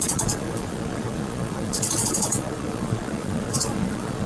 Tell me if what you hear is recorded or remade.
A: remade